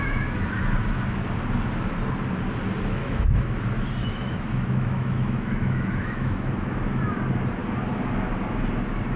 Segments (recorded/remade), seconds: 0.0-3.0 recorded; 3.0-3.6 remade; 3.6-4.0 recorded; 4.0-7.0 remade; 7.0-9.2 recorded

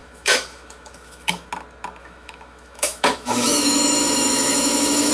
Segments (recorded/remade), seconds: 0.0-1.5 remade; 1.5-2.0 recorded; 2.0-5.1 remade

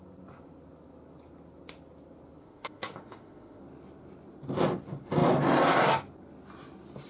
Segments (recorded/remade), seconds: 0.0-2.4 recorded; 2.4-3.6 remade; 3.6-7.1 recorded

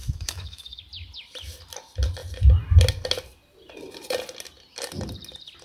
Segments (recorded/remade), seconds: 0.0-0.8 remade; 0.8-5.6 recorded

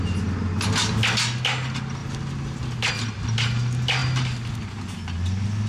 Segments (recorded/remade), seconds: 0.0-5.7 recorded

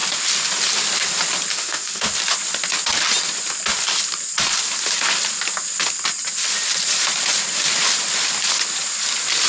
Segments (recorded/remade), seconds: 0.0-1.5 recorded; 1.5-2.1 remade; 2.1-9.5 recorded

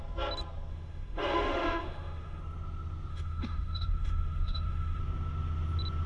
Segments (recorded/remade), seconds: 0.0-0.7 recorded; 0.7-2.4 remade; 2.4-3.1 recorded; 3.1-5.0 remade; 5.0-6.1 recorded